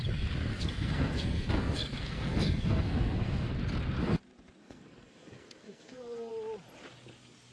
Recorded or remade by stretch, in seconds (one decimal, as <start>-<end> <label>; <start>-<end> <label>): 0.0-0.5 recorded; 0.5-3.5 remade; 3.5-4.6 recorded; 4.6-6.3 remade; 6.3-7.5 recorded